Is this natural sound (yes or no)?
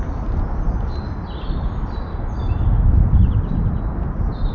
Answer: yes